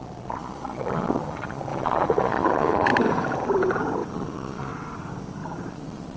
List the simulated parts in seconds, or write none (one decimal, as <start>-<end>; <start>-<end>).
0.0-2.9; 4.1-4.7; 5.7-6.2